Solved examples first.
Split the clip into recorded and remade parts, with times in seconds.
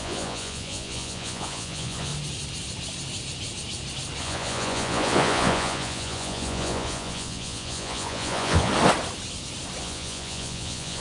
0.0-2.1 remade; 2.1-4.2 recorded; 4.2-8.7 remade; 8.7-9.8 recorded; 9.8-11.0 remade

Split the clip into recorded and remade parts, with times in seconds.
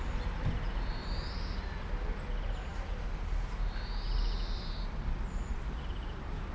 0.0-6.5 recorded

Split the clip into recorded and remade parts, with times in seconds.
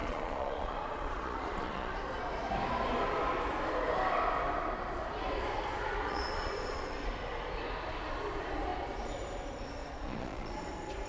0.0-2.0 remade; 2.0-6.1 recorded; 6.1-6.8 remade; 6.8-9.8 recorded; 9.8-10.6 remade; 10.6-11.1 recorded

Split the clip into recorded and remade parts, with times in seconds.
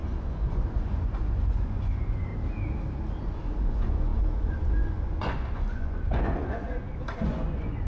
0.0-2.3 remade; 2.3-3.2 recorded; 3.2-7.9 remade